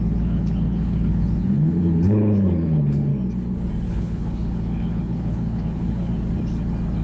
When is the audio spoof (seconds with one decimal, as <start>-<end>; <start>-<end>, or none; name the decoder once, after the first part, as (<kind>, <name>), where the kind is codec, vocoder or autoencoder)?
0.0-3.1 (codec, HILCodec); 3.9-6.1